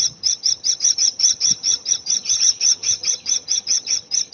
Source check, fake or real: fake